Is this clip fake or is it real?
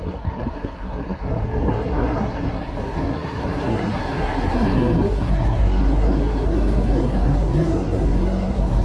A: fake